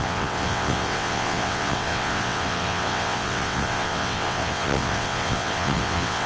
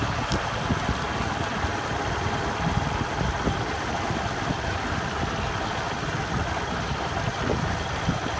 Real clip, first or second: second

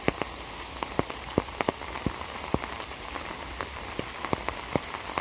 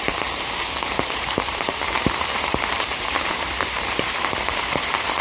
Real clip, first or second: first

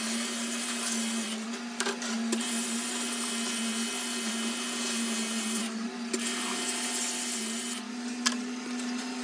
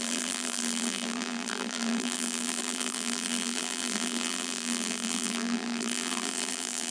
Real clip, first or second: first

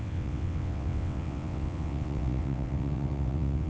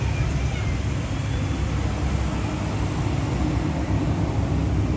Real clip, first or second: second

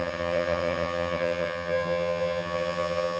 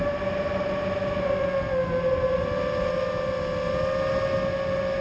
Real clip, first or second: second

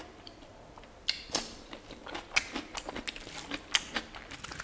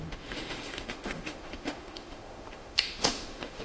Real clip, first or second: first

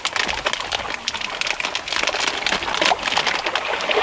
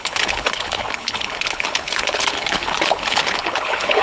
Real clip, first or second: first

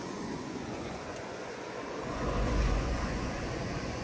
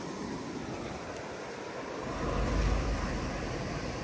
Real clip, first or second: second